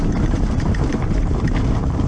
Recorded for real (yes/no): no